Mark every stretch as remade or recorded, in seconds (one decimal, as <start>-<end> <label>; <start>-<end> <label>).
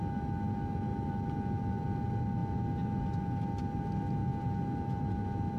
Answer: 0.0-5.6 recorded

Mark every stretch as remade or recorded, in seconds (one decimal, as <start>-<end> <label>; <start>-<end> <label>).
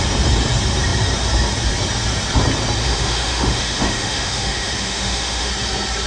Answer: 0.0-2.8 recorded; 2.8-5.5 remade; 5.5-6.1 recorded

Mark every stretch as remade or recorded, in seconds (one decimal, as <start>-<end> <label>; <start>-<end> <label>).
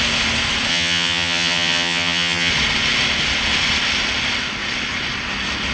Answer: 0.0-0.7 recorded; 0.7-2.5 remade; 2.5-5.7 recorded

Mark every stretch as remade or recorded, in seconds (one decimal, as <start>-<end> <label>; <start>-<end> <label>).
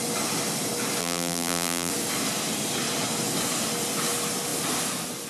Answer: 0.0-1.0 recorded; 1.0-1.9 remade; 1.9-5.3 recorded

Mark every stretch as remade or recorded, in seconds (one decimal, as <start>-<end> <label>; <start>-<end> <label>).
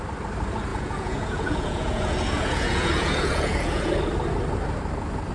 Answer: 0.0-0.7 recorded; 0.7-3.9 remade; 3.9-5.3 recorded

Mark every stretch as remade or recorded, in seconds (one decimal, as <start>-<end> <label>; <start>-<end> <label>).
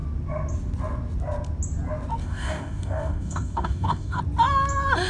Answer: 0.0-2.2 recorded; 2.2-4.2 remade; 4.2-5.1 recorded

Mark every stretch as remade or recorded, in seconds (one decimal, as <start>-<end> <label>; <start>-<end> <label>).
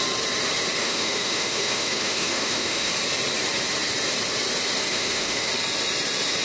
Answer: 0.0-0.8 recorded; 0.8-2.9 remade; 2.9-4.9 recorded; 4.9-5.5 remade; 5.5-6.4 recorded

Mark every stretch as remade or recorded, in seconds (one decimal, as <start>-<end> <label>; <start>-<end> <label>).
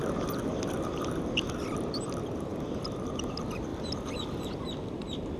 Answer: 0.0-5.4 recorded